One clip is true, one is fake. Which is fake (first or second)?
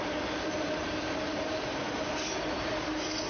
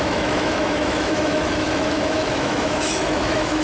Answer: second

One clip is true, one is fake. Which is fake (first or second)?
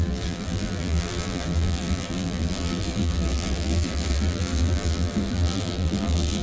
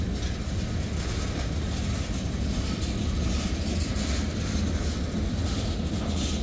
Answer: first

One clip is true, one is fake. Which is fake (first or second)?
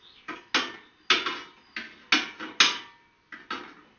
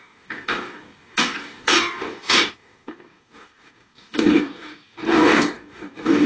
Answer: second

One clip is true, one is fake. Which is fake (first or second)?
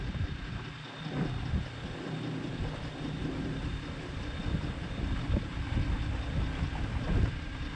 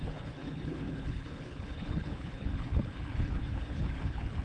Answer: second